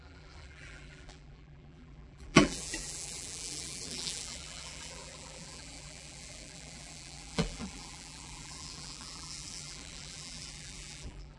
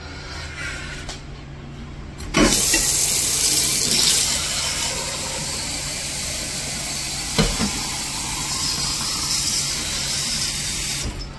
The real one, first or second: second